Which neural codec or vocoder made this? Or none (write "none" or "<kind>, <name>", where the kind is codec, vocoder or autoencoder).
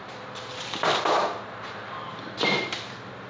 none